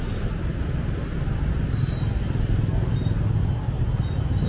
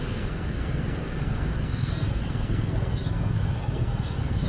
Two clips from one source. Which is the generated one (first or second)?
second